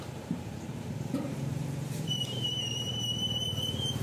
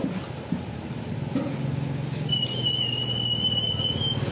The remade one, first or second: first